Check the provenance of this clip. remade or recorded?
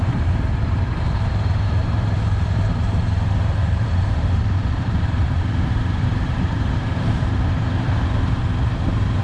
remade